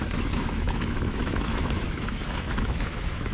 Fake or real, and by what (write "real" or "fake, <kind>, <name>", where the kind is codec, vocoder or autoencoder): fake, autoencoder, DAC-VAE